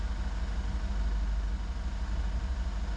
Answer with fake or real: real